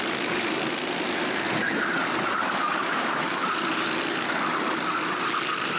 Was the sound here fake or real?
real